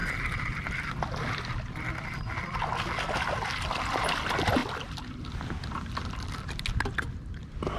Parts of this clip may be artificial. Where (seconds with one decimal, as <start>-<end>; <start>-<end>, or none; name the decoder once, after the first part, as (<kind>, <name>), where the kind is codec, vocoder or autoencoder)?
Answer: none